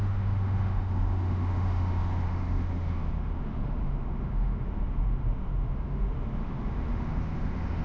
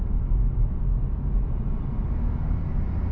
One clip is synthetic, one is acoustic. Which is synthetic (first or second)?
first